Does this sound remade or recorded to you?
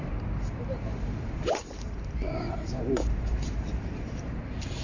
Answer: remade